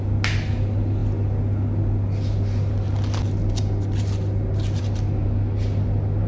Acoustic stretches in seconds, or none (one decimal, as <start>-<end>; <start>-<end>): 0.0-6.3